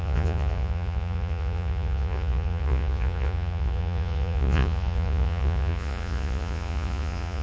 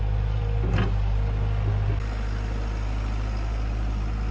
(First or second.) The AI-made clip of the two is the first